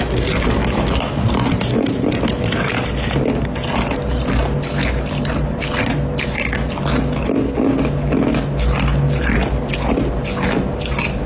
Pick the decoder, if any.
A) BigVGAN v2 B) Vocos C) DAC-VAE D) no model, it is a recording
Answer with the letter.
D